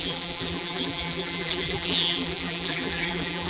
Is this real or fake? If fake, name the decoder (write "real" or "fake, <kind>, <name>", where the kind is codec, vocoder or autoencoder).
fake, vocoder, BigVGAN v2